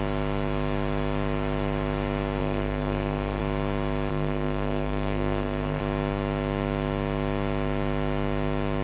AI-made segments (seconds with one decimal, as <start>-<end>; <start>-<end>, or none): 2.4-3.4; 4.1-5.8